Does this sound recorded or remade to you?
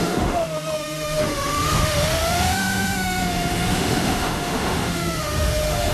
remade